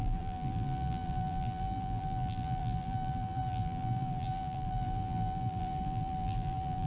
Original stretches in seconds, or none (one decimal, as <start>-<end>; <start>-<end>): none